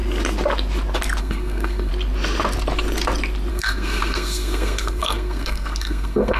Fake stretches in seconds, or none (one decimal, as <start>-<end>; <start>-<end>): 1.2-1.9; 3.5-6.4

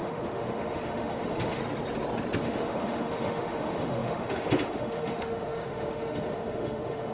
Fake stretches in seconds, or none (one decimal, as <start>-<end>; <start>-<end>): 0.0-1.6; 2.4-7.1